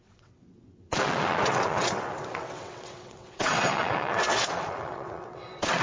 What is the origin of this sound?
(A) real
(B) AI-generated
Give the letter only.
B